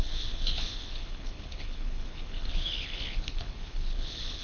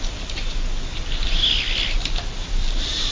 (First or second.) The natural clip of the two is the second